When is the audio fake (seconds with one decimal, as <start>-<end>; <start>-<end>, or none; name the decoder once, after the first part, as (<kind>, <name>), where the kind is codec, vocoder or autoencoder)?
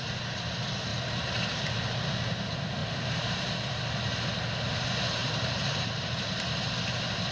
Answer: 0.9-1.7 (vocoder, BigVGAN v2); 2.8-3.8; 5.2-6.3